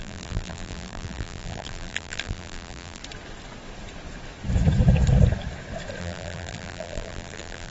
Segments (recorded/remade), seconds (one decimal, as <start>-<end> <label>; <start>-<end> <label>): 0.0-3.0 remade; 3.0-6.0 recorded; 6.0-7.7 remade